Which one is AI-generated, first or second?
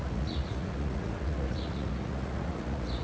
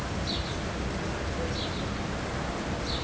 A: first